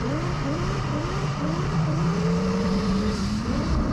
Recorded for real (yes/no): no